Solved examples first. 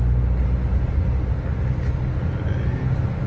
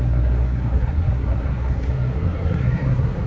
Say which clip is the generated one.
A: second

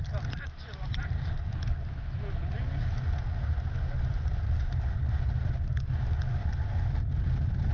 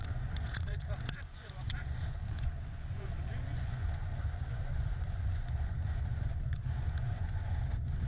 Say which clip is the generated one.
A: second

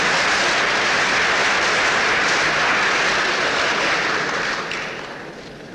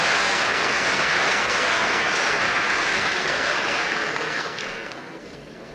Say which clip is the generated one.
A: second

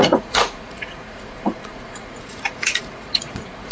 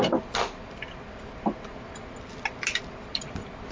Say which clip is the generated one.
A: first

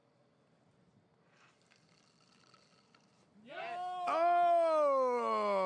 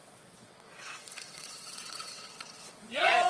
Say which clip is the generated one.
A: second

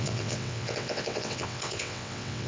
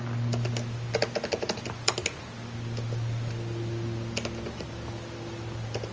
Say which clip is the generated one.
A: first